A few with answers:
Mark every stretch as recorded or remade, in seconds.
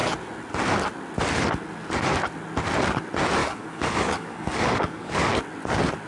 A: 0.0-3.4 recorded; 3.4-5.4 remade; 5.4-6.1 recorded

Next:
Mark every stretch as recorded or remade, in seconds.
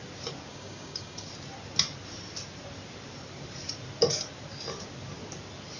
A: 0.0-0.5 recorded; 0.5-1.3 remade; 1.3-5.8 recorded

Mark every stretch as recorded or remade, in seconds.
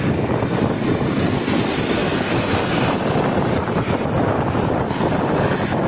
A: 0.0-5.9 recorded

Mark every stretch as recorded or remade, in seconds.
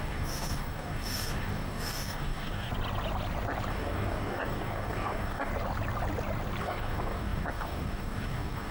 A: 0.0-2.7 remade; 2.7-3.7 recorded; 3.7-5.5 remade; 5.5-6.6 recorded; 6.6-8.7 remade